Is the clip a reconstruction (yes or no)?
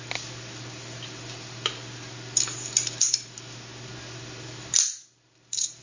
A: no